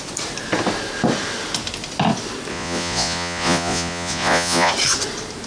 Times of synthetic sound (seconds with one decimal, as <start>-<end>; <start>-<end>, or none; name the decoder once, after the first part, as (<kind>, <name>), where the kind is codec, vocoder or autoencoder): 2.5-4.7 (vocoder, Vocos)